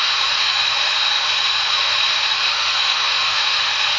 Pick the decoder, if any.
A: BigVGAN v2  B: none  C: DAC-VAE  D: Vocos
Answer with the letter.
C